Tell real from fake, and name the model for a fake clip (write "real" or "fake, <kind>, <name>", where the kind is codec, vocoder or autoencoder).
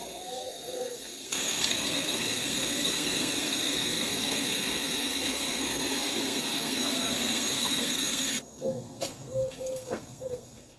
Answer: fake, codec, SNAC